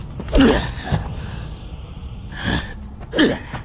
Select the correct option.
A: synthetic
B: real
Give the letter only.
B